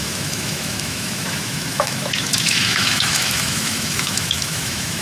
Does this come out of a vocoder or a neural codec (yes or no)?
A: yes